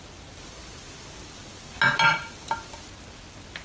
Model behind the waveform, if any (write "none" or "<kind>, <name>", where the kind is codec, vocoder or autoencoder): none